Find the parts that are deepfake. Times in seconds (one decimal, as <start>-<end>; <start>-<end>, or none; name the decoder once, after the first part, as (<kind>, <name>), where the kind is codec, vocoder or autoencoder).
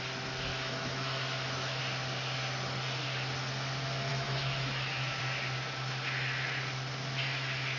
0.5-1.8 (autoencoder, DAC-VAE); 4.1-5.2